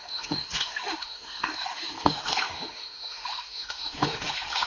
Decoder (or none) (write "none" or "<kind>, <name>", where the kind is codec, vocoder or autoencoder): autoencoder, DAC-VAE